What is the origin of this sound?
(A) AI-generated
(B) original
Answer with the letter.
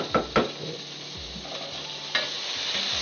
B